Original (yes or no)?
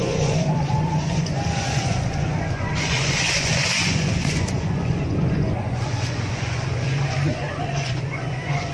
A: no